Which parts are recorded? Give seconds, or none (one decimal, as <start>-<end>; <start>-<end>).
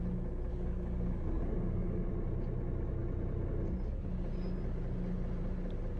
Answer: 0.0-0.5; 2.1-6.0